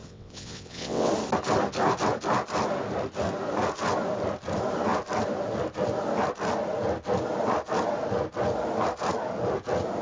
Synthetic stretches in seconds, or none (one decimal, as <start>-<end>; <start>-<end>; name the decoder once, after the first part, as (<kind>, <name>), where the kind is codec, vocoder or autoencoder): 0.0-1.1 (vocoder, WaveNeXt)